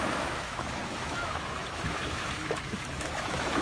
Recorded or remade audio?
remade